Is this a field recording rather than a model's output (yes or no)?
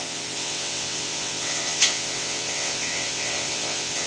no